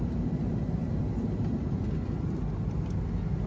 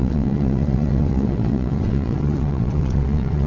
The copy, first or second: second